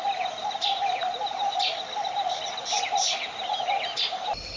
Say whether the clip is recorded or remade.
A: recorded